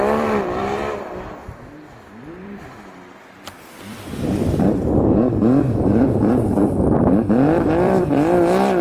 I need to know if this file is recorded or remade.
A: remade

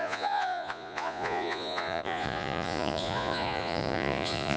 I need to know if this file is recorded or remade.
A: remade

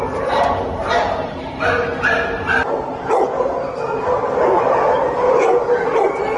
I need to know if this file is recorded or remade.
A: recorded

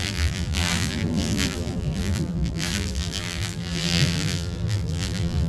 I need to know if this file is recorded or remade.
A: remade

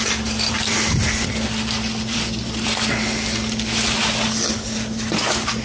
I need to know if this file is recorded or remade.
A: recorded